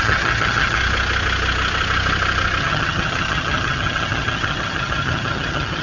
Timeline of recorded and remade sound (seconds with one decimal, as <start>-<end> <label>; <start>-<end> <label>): 0.0-0.8 remade; 0.8-2.6 recorded; 2.6-5.8 remade

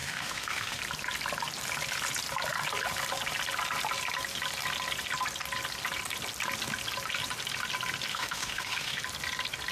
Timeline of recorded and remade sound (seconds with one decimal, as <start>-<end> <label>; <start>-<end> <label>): 0.0-0.8 remade; 0.8-8.1 recorded; 8.1-9.0 remade; 9.0-9.7 recorded

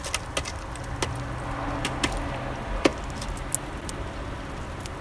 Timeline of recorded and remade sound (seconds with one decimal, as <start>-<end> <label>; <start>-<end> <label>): 0.0-5.0 recorded